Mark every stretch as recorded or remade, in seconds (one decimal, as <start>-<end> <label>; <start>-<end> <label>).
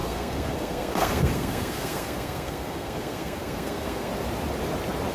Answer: 0.0-4.1 remade; 4.1-5.1 recorded